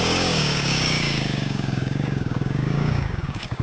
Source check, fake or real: fake